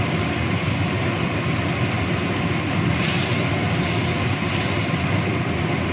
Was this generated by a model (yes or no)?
no